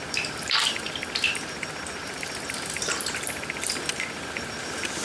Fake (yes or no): yes